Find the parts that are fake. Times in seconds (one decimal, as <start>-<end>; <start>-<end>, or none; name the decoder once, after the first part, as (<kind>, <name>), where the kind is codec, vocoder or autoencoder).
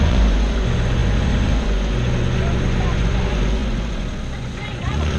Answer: 0.0-5.2 (vocoder, Vocos)